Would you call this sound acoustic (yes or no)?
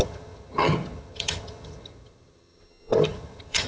no